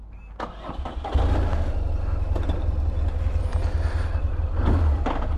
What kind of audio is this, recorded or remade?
recorded